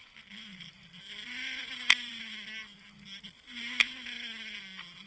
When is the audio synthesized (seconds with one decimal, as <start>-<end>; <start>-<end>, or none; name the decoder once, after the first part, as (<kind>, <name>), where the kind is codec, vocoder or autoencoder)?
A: none